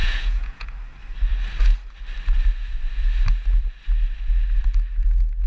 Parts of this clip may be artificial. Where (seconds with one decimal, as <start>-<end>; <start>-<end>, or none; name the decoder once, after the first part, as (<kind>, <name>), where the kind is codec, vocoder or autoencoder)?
0.0-0.7 (vocoder, Vocos)